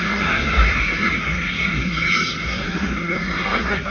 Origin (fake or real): fake